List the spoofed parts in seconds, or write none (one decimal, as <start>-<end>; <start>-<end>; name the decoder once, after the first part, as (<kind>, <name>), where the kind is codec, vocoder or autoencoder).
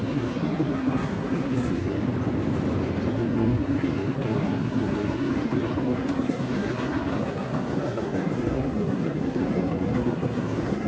0.0-2.0 (codec, SNAC); 3.1-10.9